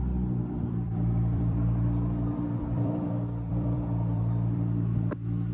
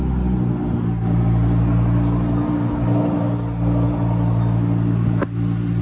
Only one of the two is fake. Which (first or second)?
first